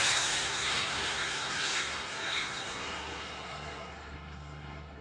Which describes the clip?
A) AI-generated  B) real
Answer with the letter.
A